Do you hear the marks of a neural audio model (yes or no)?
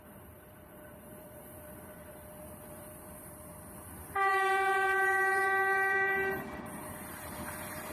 yes